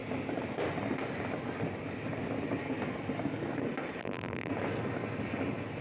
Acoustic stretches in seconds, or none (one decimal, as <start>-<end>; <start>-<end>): 0.0-4.0; 4.5-5.8